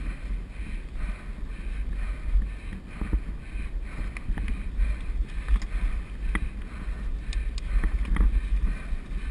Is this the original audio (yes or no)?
yes